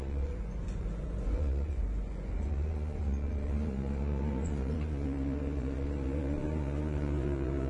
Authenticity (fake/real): fake